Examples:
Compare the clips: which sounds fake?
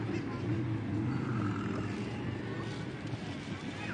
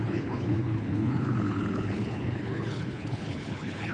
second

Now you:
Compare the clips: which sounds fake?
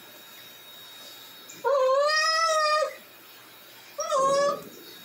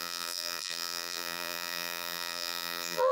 second